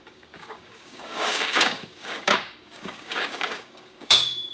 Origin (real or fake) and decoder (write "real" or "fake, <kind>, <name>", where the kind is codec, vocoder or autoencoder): fake, codec, DAC